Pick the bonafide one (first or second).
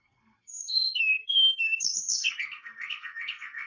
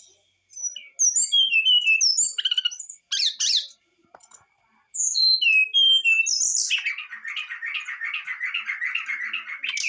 second